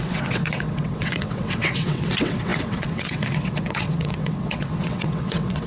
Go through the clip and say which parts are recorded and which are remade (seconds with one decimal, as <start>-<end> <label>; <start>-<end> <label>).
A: 0.0-5.7 remade